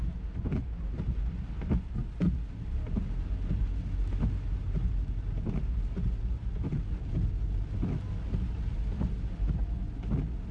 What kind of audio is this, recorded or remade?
recorded